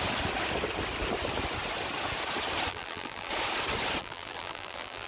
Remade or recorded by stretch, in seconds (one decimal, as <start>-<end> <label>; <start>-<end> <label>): 0.0-2.7 recorded; 2.7-3.3 remade; 3.3-4.0 recorded; 4.0-5.1 remade